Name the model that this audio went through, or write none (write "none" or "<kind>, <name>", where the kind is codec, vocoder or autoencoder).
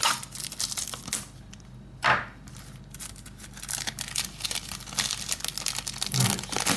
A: none